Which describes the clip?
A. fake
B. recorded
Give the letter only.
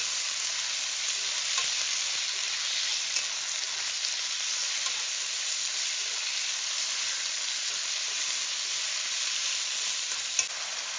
B